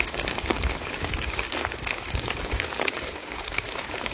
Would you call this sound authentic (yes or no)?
no